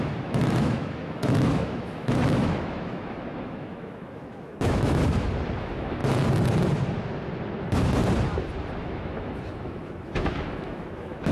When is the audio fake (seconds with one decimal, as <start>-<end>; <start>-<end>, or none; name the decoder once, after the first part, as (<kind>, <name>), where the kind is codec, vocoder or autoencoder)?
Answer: 0.0-5.0 (autoencoder, DAC-VAE); 5.6-6.0; 8.8-11.3